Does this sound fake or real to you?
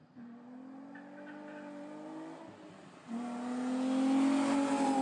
real